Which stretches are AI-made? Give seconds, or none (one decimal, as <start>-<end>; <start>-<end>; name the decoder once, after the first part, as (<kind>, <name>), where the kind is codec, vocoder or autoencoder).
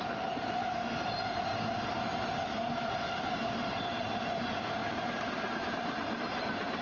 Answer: 0.0-1.5 (vocoder, BigVGAN v2); 2.6-4.8; 5.7-6.8